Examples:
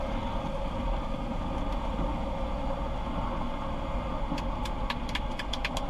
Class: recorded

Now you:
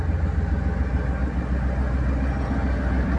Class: recorded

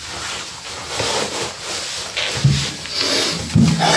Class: recorded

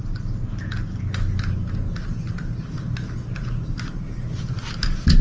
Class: recorded